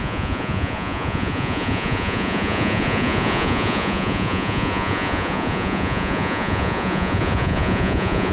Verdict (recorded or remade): remade